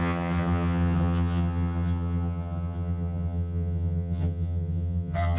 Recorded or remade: remade